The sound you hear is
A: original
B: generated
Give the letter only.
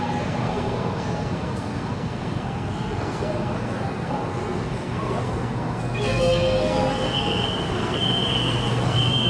B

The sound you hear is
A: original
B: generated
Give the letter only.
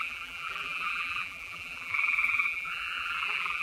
B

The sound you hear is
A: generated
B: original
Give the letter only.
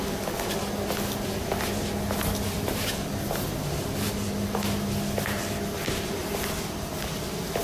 B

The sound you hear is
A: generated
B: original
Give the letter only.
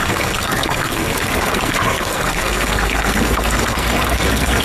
A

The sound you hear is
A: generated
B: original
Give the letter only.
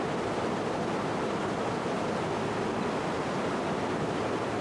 B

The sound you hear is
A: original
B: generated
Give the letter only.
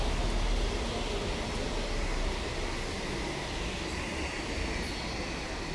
A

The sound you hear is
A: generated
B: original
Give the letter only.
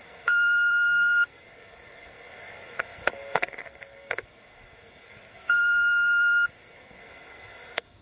A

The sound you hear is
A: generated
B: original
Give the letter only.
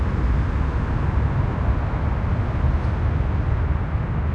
B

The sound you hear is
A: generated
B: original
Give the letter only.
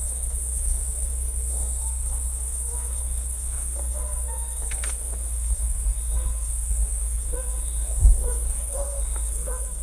A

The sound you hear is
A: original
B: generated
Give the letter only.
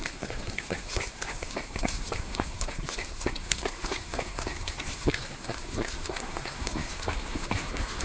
B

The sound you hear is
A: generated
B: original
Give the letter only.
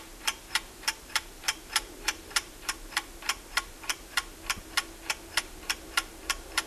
A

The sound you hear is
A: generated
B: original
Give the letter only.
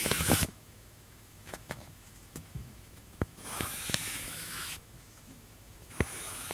A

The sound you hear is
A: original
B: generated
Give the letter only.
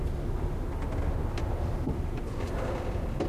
A